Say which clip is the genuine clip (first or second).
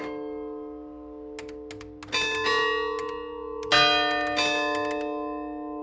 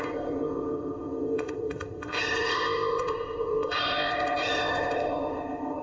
first